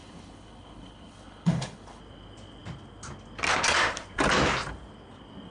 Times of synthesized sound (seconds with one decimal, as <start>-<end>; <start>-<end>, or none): 0.0-2.0